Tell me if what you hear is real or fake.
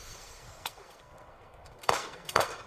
fake